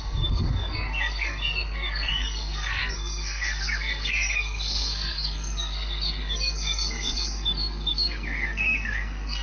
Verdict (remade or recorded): remade